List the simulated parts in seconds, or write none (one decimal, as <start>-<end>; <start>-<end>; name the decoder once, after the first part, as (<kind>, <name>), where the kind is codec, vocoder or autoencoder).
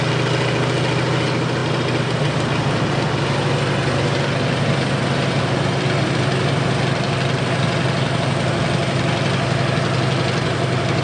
none